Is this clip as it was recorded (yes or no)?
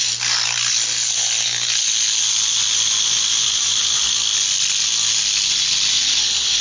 yes